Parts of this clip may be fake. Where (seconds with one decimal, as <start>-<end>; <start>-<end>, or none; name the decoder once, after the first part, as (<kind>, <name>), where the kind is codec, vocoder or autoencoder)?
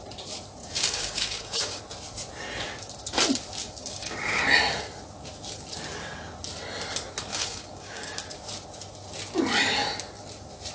0.6-1.8 (codec, DAC); 3.6-4.4; 7.3-8.2